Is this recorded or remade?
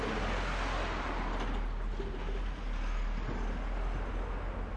recorded